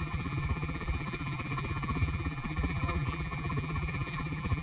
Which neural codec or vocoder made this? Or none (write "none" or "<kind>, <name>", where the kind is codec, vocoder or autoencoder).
vocoder, BigVGAN v2